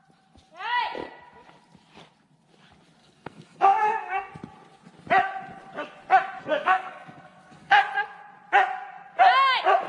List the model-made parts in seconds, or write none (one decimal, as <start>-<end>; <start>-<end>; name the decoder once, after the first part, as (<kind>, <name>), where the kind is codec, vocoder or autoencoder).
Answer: 3.0-4.3 (codec, SNAC); 6.4-7.8